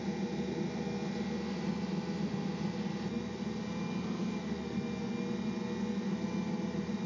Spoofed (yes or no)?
no